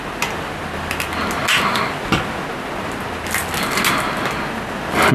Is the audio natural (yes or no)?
yes